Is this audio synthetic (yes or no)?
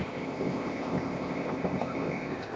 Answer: yes